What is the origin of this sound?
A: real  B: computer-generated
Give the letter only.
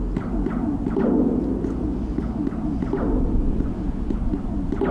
A